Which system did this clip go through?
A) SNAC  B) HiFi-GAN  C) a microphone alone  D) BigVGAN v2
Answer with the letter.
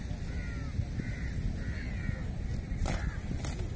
C